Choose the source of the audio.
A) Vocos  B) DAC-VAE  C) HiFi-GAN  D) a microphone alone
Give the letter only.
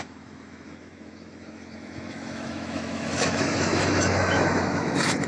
B